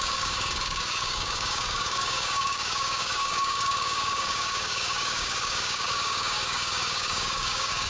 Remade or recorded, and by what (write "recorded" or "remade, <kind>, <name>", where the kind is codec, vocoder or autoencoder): remade, codec, DAC